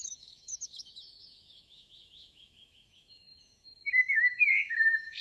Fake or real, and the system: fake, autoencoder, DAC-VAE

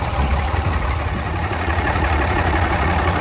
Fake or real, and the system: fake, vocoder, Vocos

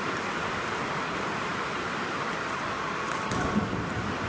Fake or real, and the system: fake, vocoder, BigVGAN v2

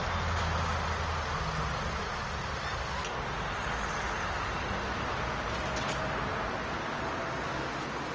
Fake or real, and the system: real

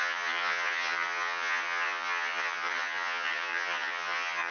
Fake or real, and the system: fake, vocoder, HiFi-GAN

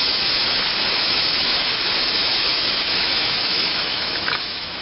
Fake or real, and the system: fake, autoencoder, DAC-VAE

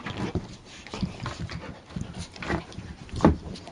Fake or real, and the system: real